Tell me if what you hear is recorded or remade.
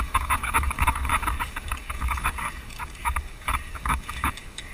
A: remade